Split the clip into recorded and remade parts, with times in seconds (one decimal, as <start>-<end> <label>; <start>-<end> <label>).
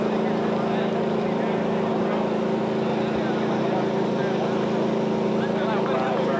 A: 0.0-6.4 recorded